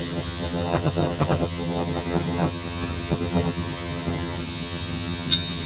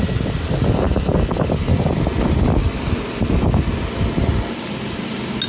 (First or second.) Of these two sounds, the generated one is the first